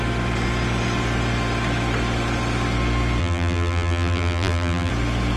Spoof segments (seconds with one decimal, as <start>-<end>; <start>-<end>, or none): 3.2-4.9